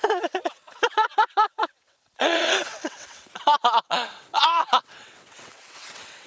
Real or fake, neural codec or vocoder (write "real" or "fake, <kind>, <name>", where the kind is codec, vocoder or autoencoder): fake, vocoder, WaveNeXt